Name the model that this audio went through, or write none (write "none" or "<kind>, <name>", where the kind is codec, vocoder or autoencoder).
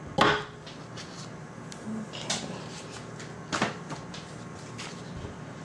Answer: none